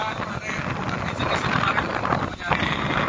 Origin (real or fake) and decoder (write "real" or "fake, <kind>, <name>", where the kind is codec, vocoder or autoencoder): real